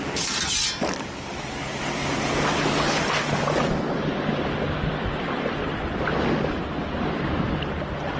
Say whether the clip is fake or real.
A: real